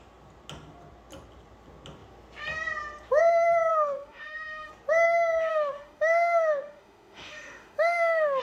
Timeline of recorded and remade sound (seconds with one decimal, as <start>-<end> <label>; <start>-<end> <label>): 0.0-3.7 recorded; 3.7-4.7 remade; 4.7-5.5 recorded; 5.5-8.4 remade

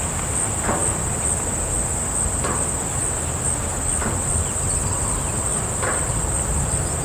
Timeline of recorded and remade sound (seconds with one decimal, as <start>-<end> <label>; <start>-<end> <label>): 0.0-7.0 recorded